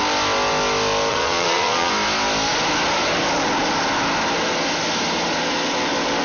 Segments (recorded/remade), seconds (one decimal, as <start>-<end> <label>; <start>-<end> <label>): 0.0-1.1 recorded; 1.1-1.9 remade; 1.9-6.2 recorded

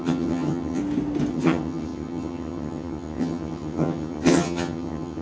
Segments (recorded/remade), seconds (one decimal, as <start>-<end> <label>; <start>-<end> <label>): 0.0-0.8 remade; 0.8-1.3 recorded; 1.3-5.2 remade

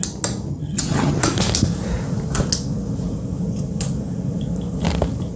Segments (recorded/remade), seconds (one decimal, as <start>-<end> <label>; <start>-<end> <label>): 0.0-0.5 recorded; 0.5-1.2 remade; 1.2-5.4 recorded